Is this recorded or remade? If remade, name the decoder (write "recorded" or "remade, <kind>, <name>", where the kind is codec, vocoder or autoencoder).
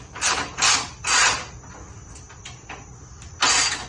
recorded